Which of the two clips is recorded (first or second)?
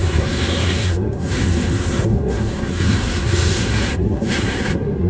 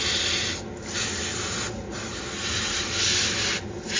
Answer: second